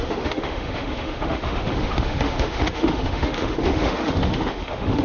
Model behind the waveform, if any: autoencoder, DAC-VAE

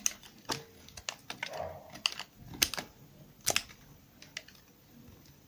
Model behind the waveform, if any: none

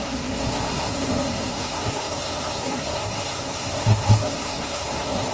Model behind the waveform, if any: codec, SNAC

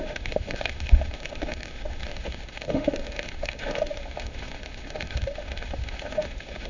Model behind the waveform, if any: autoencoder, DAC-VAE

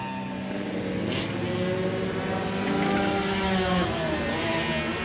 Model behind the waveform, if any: none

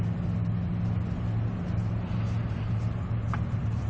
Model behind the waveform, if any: none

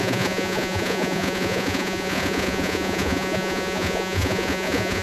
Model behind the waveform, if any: vocoder, Vocos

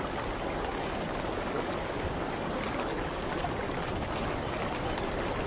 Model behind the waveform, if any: none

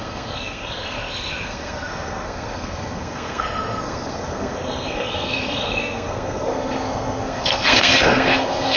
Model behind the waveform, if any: codec, SNAC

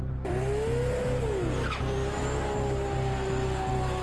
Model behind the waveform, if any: none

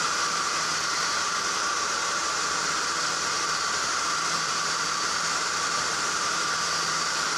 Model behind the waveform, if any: vocoder, BigVGAN v2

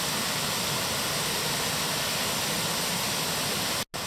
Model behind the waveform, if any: none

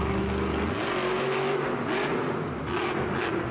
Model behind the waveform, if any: none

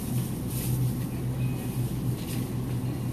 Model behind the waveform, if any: none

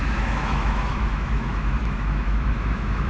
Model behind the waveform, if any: autoencoder, DAC-VAE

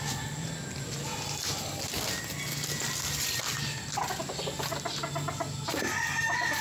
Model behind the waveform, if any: none